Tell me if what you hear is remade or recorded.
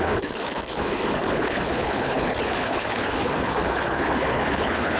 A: remade